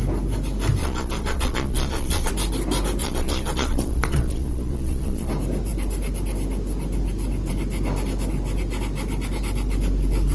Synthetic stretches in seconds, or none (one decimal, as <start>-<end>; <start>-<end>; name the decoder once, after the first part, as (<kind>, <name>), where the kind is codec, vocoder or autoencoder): 0.8-2.3 (vocoder, Vocos); 3.0-5.3